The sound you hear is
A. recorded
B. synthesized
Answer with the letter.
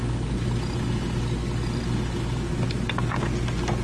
A